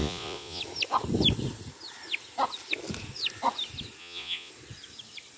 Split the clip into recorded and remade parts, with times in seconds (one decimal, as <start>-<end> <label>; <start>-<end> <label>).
0.0-0.6 remade; 0.6-4.0 recorded; 4.0-4.5 remade; 4.5-5.4 recorded